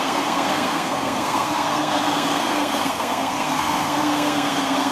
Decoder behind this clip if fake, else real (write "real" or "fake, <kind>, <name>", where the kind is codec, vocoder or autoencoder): fake, codec, SNAC